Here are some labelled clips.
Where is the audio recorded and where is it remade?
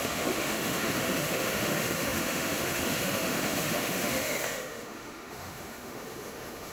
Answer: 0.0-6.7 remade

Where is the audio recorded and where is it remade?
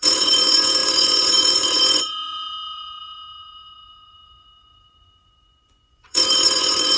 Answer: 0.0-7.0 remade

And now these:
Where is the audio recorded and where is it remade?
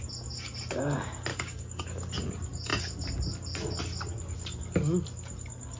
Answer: 0.0-1.3 recorded; 1.3-1.8 remade; 1.8-5.8 recorded